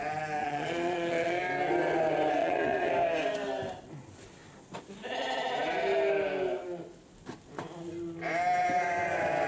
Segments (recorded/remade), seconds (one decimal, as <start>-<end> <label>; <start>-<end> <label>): 0.0-0.4 recorded; 0.4-1.4 remade; 1.4-2.4 recorded; 2.4-2.9 remade; 2.9-9.5 recorded